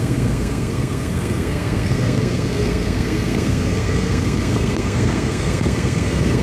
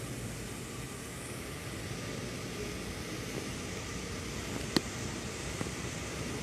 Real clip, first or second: second